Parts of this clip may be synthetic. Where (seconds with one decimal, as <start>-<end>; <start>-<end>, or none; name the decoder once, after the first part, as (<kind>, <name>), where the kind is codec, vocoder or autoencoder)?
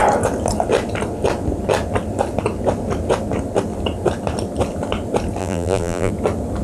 5.4-6.1 (vocoder, BigVGAN v2)